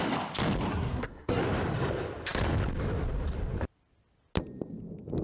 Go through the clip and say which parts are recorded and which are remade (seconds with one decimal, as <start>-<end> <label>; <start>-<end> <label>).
0.0-0.7 recorded; 0.7-1.4 remade; 1.4-5.2 recorded